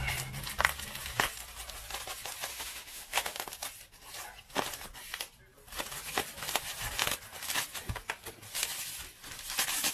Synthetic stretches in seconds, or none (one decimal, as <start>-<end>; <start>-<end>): 2.5-3.4